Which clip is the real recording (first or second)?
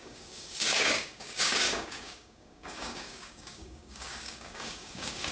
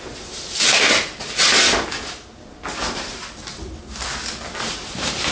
second